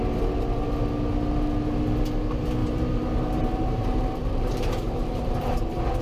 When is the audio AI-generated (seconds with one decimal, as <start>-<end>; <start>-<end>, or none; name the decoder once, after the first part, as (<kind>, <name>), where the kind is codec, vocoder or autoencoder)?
2.6-6.0 (vocoder, BigVGAN v2)